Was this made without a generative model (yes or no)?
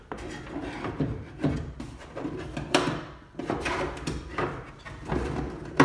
no